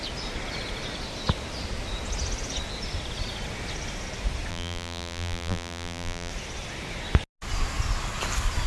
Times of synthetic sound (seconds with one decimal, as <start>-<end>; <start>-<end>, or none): 4.5-6.3